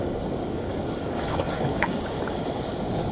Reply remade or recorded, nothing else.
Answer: remade